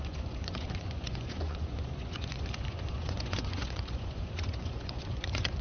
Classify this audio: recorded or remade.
remade